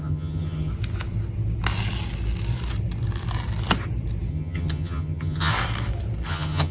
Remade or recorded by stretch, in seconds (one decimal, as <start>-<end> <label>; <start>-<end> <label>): 0.0-0.7 remade; 0.7-4.3 recorded; 4.3-5.5 remade; 5.5-6.3 recorded; 6.3-6.7 remade